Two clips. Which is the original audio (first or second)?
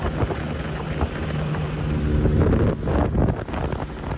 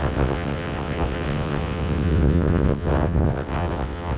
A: first